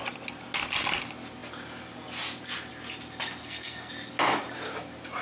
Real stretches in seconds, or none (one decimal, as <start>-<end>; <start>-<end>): 0.0-3.4; 3.9-5.2